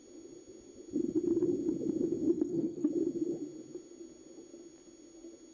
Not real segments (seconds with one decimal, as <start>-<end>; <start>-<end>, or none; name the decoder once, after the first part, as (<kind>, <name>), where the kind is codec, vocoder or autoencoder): 2.3-2.9 (codec, SNAC)